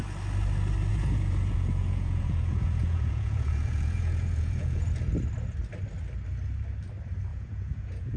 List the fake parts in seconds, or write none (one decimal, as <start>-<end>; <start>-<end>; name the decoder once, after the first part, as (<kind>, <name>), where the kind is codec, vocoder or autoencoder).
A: 0.9-4.9 (vocoder, Vocos); 7.3-8.2